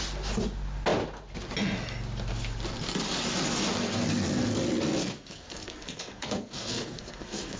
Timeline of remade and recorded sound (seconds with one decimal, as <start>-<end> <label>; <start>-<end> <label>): 0.0-5.0 recorded; 5.0-7.6 remade